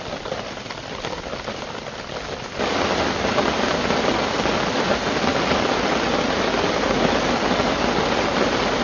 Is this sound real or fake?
real